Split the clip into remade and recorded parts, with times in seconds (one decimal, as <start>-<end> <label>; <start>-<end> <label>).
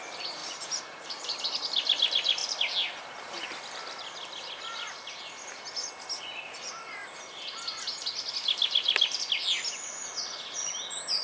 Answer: 0.0-0.4 recorded; 0.4-1.4 remade; 1.4-11.2 recorded